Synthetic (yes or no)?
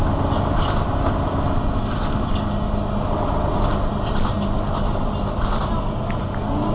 no